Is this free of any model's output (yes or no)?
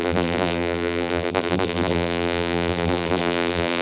no